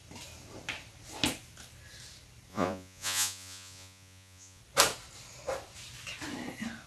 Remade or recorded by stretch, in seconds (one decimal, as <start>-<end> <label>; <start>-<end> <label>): 0.0-2.5 recorded; 2.5-4.6 remade; 4.6-6.9 recorded